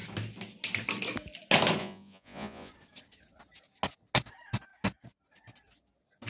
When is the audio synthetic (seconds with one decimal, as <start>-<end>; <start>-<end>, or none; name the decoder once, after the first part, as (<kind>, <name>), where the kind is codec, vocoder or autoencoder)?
1.8-2.7 (vocoder, Vocos)